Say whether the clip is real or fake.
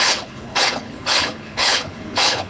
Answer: fake